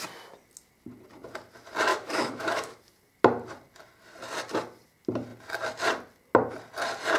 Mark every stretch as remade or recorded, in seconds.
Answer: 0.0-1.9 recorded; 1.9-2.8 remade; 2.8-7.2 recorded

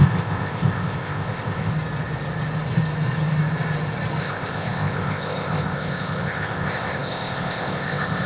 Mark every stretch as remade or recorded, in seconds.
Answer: 0.0-1.7 remade; 1.7-4.2 recorded; 4.2-8.3 remade

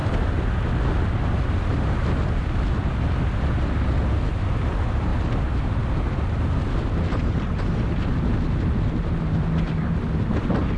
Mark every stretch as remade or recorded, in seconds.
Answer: 0.0-10.8 recorded

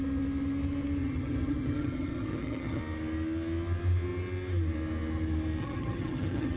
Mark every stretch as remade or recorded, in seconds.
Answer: 0.0-1.0 recorded; 1.0-2.8 remade; 2.8-5.6 recorded; 5.6-6.6 remade

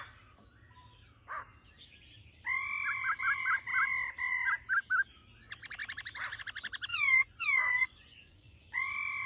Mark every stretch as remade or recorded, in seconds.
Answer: 0.0-6.9 recorded; 6.9-8.8 remade; 8.8-9.3 recorded

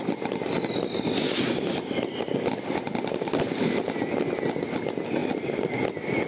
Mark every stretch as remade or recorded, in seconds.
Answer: 0.0-6.3 recorded

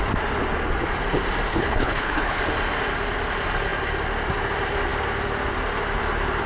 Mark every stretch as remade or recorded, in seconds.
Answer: 0.0-1.5 recorded; 1.5-2.4 remade; 2.4-6.5 recorded